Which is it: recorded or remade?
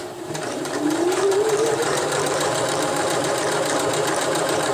remade